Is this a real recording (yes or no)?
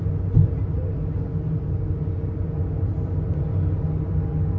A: yes